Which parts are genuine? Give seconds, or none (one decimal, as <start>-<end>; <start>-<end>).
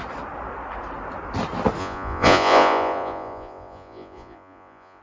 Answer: 0.0-1.8